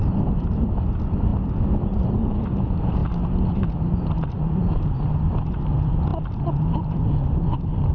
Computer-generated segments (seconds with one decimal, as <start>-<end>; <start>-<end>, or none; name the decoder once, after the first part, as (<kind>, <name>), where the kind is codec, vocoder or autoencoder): none